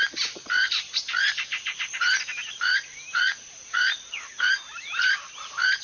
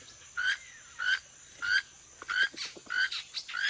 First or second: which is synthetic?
first